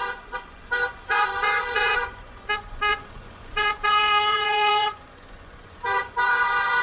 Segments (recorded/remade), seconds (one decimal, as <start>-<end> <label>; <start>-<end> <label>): 0.0-6.8 remade